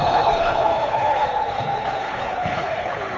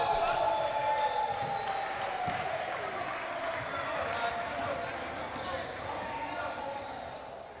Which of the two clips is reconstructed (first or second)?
first